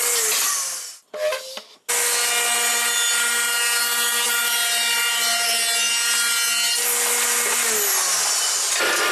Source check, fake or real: real